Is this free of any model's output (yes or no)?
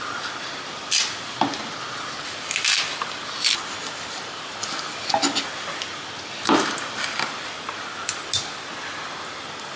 yes